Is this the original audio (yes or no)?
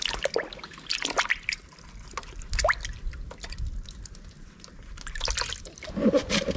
yes